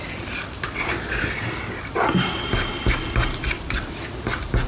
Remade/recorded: recorded